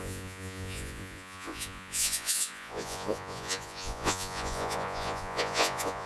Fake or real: fake